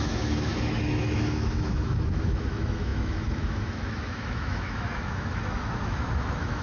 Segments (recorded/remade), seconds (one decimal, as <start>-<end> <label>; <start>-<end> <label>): 0.0-6.6 remade